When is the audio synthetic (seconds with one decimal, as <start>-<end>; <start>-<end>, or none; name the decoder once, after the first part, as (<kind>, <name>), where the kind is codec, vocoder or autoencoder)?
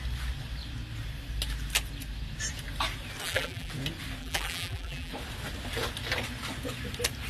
3.2-3.7 (vocoder, BigVGAN v2); 4.2-5.1